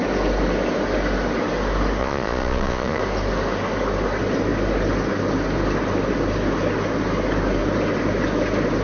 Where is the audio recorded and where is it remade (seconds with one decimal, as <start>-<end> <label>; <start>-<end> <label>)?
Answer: 0.0-2.0 recorded; 2.0-3.0 remade; 3.0-8.8 recorded